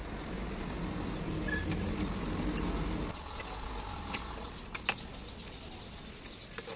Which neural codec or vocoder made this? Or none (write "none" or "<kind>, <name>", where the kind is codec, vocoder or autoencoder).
none